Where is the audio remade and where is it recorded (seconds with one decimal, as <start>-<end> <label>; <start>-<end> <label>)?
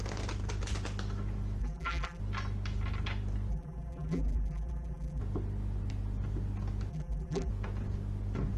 0.0-1.6 recorded; 1.6-2.2 remade; 2.2-3.5 recorded; 3.5-5.2 remade; 5.2-6.9 recorded; 6.9-7.5 remade; 7.5-8.6 recorded